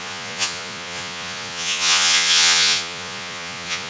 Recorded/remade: remade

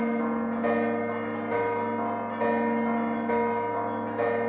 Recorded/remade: recorded